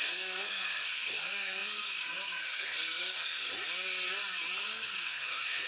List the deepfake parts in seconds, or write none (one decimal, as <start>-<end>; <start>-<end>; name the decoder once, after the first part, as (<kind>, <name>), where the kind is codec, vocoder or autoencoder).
0.0-3.5 (codec, SNAC); 4.6-5.7